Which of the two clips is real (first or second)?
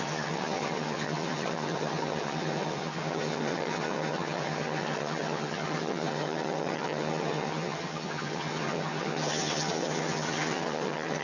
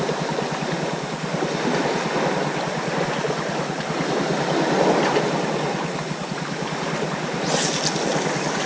second